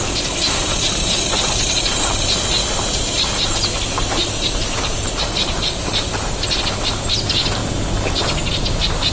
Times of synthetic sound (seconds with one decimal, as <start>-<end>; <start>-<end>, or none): none